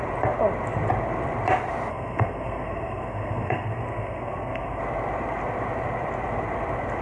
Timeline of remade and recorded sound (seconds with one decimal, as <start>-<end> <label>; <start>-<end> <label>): 0.0-1.9 recorded; 1.9-4.8 remade; 4.8-7.0 recorded